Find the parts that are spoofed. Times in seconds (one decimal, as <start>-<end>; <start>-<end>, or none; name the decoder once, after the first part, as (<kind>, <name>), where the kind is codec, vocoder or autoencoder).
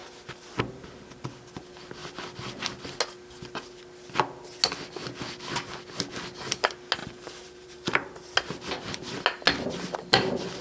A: 7.0-8.1 (vocoder, BigVGAN v2)